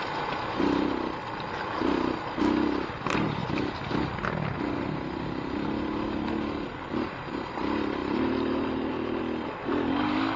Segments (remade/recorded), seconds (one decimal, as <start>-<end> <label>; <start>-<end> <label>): 0.0-8.0 recorded; 8.0-9.2 remade; 9.2-10.4 recorded